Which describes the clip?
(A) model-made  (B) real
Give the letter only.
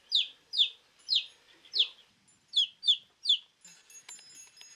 B